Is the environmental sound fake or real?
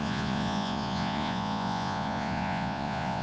fake